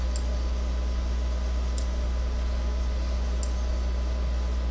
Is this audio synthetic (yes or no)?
no